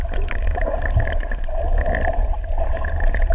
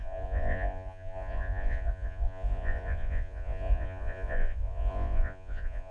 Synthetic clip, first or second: second